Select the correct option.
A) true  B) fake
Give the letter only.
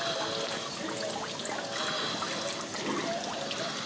A